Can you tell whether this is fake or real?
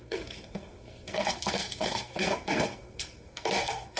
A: fake